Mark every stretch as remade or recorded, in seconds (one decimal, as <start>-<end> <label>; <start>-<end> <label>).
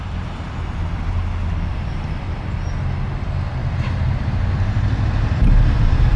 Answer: 0.0-1.2 remade; 1.2-1.7 recorded; 1.7-6.2 remade